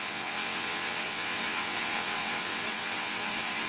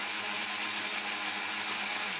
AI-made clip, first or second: first